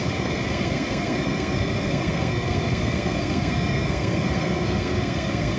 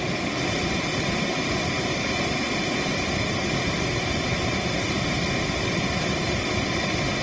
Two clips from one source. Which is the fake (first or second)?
first